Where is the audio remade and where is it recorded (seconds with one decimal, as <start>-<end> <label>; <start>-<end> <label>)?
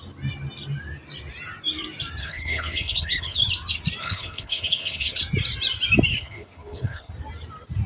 0.0-2.2 recorded; 2.2-3.5 remade; 3.5-4.0 recorded; 4.0-5.2 remade; 5.2-6.1 recorded; 6.1-7.1 remade; 7.1-7.9 recorded